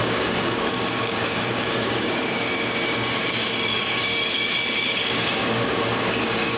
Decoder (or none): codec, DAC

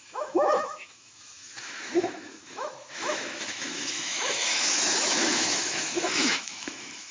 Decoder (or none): autoencoder, DAC-VAE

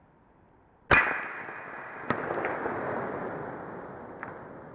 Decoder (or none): none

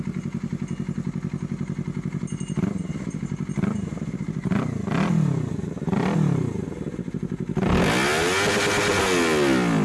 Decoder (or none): none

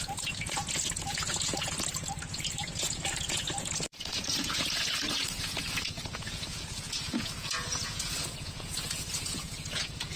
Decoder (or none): vocoder, Vocos